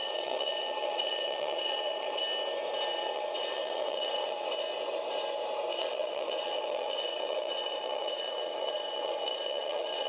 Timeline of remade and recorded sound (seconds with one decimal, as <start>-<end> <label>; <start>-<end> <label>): 0.0-2.2 remade; 2.2-2.9 recorded; 2.9-4.5 remade; 4.5-5.7 recorded; 5.7-10.1 remade

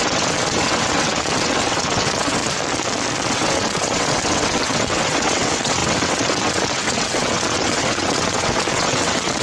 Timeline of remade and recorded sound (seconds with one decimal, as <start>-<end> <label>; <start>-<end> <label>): 0.0-2.4 remade; 2.4-3.3 recorded; 3.3-9.4 remade

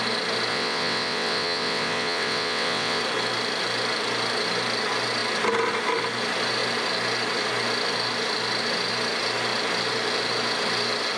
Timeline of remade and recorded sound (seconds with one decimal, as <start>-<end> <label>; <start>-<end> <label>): 0.0-0.5 recorded; 0.5-3.0 remade; 3.0-11.2 recorded

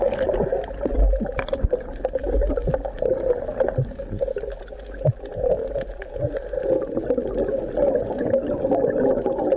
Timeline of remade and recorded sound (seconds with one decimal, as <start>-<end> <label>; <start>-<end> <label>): 0.0-9.6 recorded